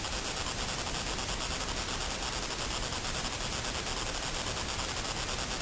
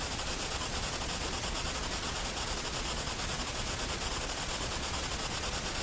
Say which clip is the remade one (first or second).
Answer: second